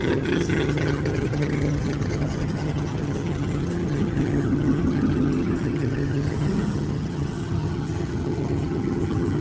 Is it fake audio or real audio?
fake